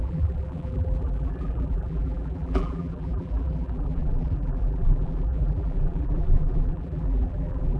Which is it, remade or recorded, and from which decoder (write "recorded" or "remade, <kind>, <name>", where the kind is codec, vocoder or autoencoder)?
remade, vocoder, BigVGAN v2